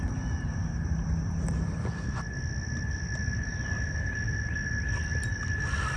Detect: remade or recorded recorded